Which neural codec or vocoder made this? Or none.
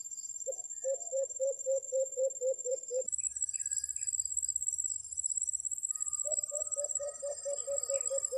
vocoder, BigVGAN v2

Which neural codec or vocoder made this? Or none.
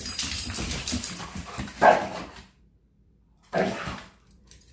vocoder, BigVGAN v2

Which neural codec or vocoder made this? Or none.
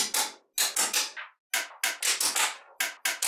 none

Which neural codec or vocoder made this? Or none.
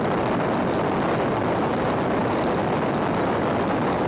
none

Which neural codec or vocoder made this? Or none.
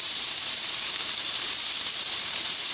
vocoder, BigVGAN v2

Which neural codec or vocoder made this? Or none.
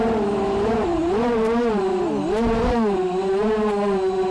vocoder, BigVGAN v2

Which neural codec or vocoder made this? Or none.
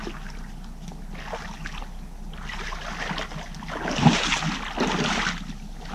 none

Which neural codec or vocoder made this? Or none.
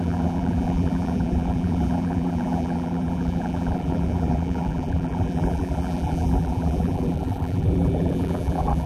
vocoder, BigVGAN v2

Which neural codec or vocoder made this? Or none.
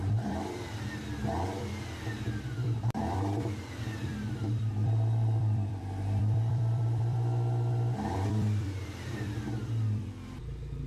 vocoder, BigVGAN v2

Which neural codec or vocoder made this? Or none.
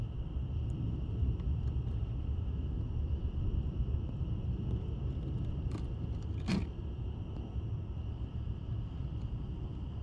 vocoder, BigVGAN v2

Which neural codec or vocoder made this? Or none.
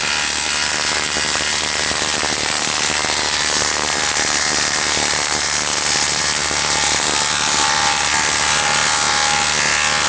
none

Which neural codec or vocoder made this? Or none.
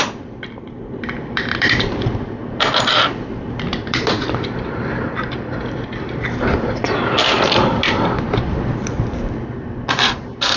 vocoder, BigVGAN v2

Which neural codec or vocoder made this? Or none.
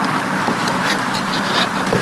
vocoder, BigVGAN v2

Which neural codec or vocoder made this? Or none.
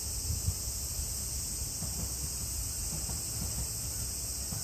none